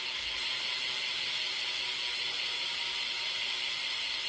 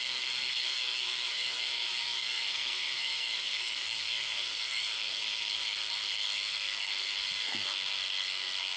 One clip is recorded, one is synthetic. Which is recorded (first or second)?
first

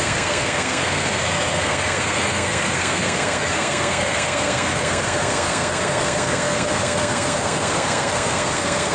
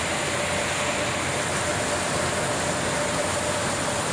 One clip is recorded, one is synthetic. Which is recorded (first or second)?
second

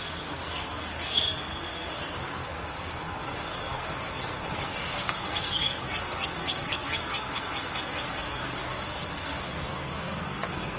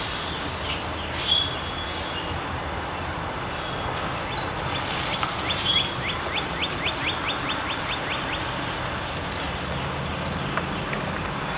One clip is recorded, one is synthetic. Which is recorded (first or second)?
second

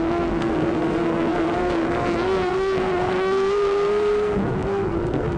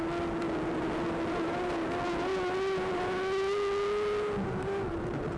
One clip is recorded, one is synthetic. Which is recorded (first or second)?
second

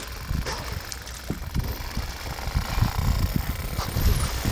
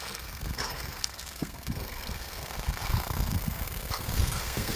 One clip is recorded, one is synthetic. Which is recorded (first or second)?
first